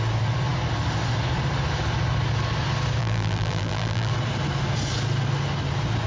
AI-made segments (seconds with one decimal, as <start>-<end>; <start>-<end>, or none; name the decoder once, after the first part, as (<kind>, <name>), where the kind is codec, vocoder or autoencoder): 3.0-4.1 (vocoder, BigVGAN v2)

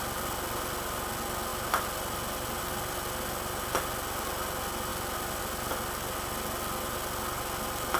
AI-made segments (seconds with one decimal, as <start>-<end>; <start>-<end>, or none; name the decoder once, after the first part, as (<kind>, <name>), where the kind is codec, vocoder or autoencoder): none

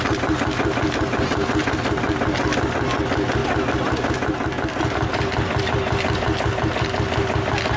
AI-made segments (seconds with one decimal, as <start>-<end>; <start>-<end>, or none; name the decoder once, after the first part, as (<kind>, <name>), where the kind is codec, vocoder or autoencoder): none